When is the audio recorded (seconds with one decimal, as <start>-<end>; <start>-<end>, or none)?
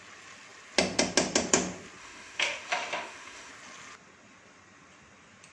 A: 0.0-2.0; 3.5-5.5